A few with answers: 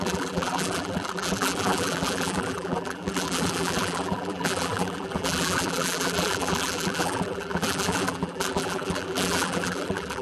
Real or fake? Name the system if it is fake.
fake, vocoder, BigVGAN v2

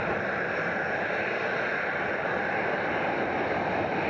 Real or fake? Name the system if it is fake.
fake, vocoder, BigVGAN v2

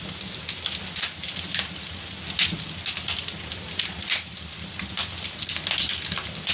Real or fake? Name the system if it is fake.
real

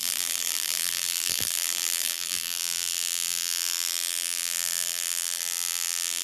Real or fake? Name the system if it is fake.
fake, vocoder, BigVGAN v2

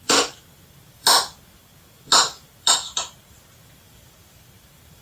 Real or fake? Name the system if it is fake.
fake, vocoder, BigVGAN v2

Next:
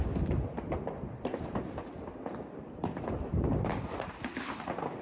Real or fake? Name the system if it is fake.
fake, vocoder, BigVGAN v2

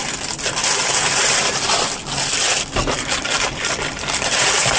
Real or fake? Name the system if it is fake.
fake, vocoder, BigVGAN v2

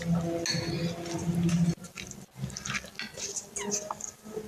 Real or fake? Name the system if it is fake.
real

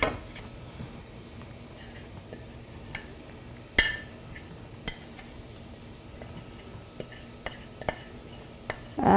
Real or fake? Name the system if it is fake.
real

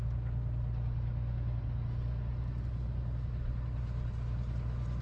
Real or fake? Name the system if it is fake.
real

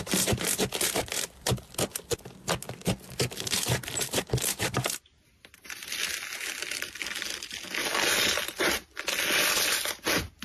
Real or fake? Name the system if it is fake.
real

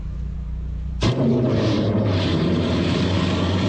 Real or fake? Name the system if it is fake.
fake, vocoder, BigVGAN v2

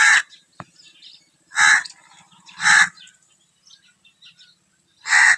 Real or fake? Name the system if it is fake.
real